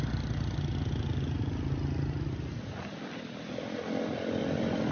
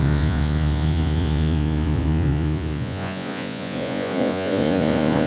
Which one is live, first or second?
first